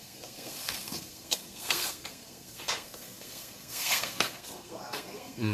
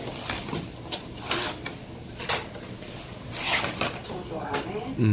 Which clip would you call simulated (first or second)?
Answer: first